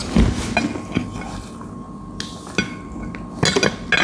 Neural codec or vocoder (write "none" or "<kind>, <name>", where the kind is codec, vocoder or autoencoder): none